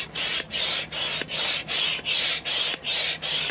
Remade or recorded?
recorded